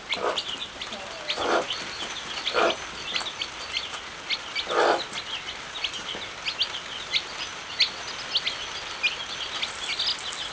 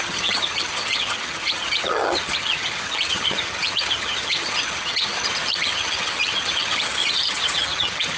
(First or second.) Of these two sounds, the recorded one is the first